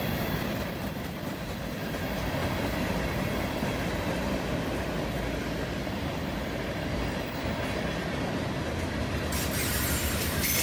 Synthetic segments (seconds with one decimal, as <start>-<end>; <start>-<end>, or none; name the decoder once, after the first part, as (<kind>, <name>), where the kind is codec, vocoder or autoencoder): none